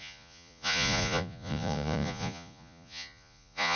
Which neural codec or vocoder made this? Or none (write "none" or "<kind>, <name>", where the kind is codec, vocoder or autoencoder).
vocoder, Vocos